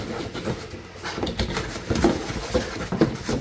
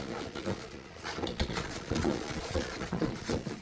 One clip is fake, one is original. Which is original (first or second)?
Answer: first